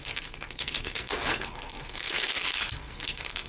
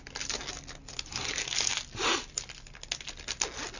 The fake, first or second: first